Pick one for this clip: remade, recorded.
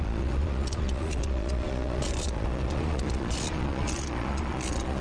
remade